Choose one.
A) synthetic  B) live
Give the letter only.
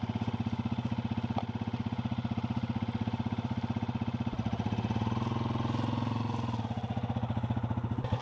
B